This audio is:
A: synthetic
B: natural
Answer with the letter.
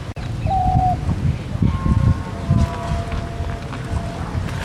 B